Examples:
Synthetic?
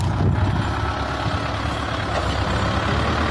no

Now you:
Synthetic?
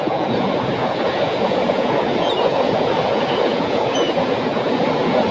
yes